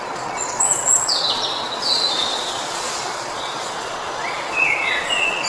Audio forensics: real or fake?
fake